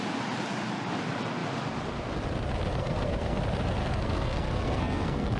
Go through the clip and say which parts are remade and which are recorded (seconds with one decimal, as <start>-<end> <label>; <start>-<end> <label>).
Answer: 0.0-2.7 recorded; 2.7-3.4 remade; 3.4-3.8 recorded; 3.8-5.4 remade